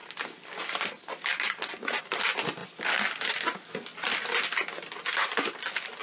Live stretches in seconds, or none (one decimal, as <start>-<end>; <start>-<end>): 0.0-6.0